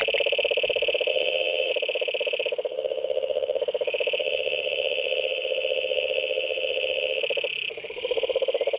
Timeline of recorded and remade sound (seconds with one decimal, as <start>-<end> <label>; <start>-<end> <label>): 0.0-1.1 recorded; 1.1-1.7 remade; 1.7-2.7 recorded; 2.7-3.6 remade; 3.6-4.2 recorded; 4.2-7.2 remade; 7.2-8.8 recorded